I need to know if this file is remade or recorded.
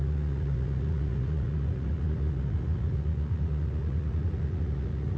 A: remade